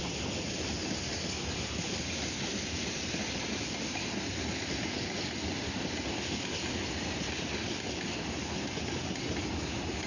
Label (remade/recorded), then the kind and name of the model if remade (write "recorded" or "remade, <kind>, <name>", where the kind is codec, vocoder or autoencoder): recorded